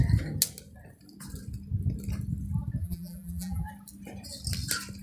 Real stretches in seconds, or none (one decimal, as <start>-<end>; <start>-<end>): 0.0-2.8; 3.7-5.0